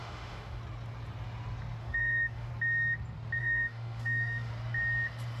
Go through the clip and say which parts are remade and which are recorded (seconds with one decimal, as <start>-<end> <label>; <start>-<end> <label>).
0.0-0.6 remade; 0.6-1.8 recorded; 1.8-2.5 remade; 2.5-3.4 recorded; 3.4-4.5 remade; 4.5-5.4 recorded